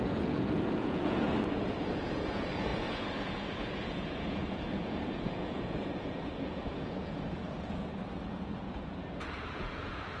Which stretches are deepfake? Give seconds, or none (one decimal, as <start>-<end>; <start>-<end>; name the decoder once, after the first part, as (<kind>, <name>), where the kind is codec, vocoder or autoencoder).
0.0-10.2 (vocoder, Vocos)